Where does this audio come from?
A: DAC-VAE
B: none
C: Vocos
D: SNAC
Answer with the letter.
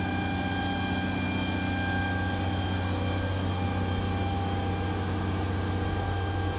B